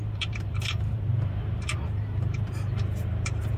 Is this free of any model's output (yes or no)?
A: no